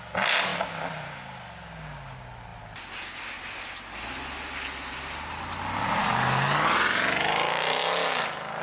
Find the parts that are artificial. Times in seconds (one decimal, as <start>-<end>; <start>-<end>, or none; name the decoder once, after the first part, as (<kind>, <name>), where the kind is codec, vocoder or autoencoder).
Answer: 0.5-1.2 (vocoder, BigVGAN v2)